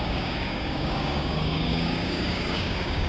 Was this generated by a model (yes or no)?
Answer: yes